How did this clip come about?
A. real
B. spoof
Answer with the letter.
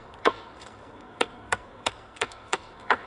B